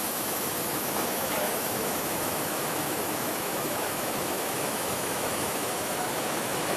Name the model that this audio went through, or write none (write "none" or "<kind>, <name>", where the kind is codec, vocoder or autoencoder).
autoencoder, DAC-VAE